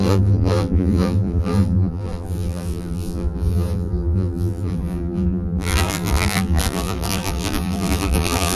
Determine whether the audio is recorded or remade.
remade